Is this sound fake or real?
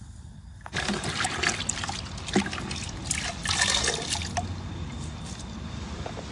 real